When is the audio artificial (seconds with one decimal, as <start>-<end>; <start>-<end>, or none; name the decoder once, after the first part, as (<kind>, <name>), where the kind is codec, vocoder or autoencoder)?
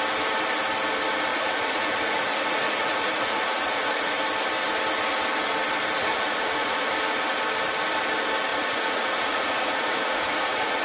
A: 1.3-4.1 (vocoder, Vocos); 6.0-6.9; 8.5-10.8